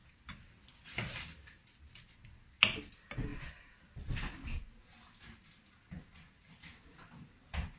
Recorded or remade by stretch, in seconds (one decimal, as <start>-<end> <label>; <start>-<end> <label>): 0.0-7.8 recorded

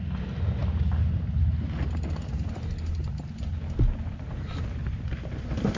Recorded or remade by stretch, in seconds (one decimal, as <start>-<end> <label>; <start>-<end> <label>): 0.0-5.8 recorded

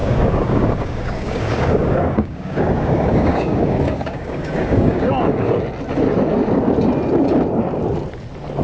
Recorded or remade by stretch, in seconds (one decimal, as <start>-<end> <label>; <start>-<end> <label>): 0.0-5.1 remade; 5.1-8.6 recorded